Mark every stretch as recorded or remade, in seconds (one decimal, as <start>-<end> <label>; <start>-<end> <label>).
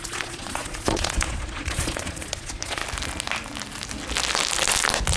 0.0-2.8 remade; 2.8-5.2 recorded